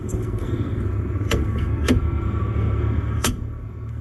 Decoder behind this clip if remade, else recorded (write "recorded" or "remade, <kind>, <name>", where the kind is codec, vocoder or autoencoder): remade, codec, SNAC